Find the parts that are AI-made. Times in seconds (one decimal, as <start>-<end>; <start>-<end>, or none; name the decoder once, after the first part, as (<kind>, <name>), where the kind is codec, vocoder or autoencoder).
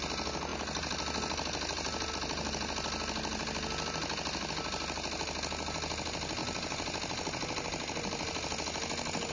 none